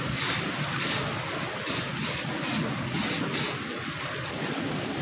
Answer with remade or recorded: recorded